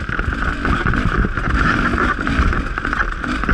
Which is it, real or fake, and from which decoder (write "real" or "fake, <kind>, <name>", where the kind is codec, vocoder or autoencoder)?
real